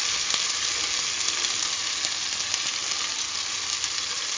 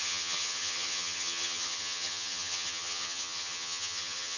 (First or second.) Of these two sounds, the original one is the first